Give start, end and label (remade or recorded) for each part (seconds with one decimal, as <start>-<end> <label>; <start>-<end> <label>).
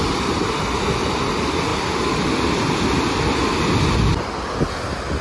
0.0-5.2 recorded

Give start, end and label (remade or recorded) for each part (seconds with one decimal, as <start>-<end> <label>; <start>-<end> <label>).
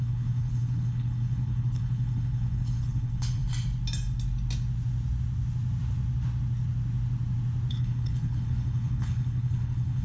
0.0-3.4 remade; 3.4-7.7 recorded; 7.7-10.0 remade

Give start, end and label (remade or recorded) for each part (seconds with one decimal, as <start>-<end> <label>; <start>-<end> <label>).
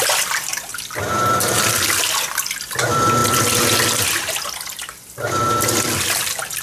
0.0-0.7 remade; 0.7-2.8 recorded; 2.8-6.6 remade